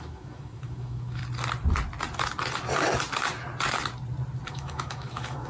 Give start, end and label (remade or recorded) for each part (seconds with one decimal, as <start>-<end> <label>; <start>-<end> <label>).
0.0-1.2 remade; 1.2-4.5 recorded; 4.5-5.5 remade